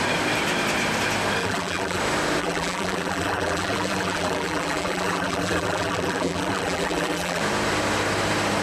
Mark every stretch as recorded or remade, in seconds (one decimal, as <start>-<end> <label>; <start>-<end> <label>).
0.0-1.4 recorded; 1.4-2.0 remade; 2.0-2.4 recorded; 2.4-7.4 remade; 7.4-8.6 recorded